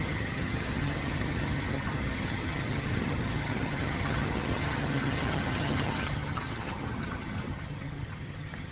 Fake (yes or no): yes